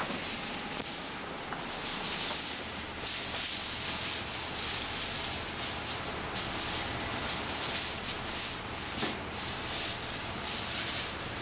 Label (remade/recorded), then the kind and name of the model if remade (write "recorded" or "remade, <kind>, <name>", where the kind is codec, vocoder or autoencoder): remade, vocoder, BigVGAN v2